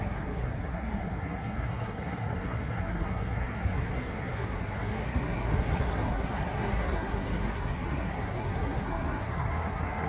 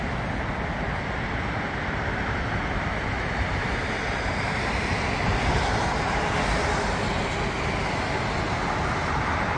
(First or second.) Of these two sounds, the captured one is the second